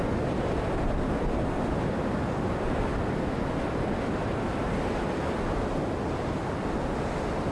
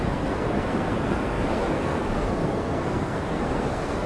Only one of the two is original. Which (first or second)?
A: first